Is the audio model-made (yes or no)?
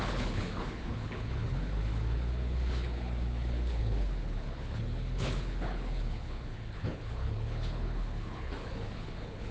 yes